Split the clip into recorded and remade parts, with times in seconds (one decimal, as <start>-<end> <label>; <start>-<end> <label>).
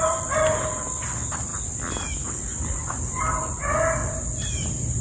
0.0-5.0 recorded